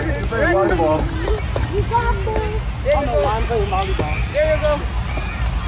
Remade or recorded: recorded